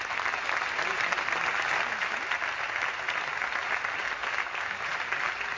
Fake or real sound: real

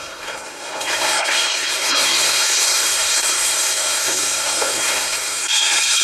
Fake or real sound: fake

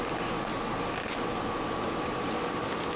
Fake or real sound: real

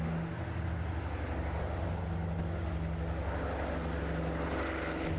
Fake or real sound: real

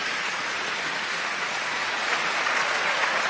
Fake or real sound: fake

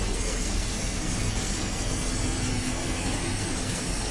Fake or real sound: fake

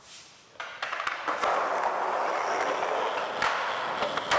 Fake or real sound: real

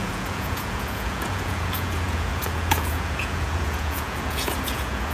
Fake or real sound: fake